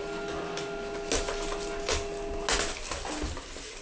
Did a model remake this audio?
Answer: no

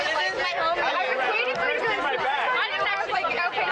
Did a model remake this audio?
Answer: no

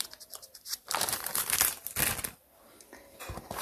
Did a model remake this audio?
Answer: yes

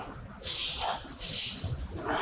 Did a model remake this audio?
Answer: no